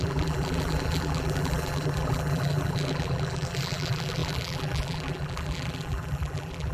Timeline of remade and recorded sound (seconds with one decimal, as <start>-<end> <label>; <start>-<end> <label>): 0.0-6.7 remade